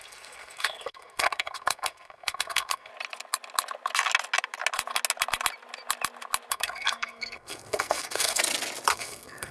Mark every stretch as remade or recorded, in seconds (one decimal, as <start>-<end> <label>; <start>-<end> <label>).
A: 0.0-2.9 remade; 2.9-6.5 recorded; 6.5-8.4 remade; 8.4-8.9 recorded; 8.9-9.5 remade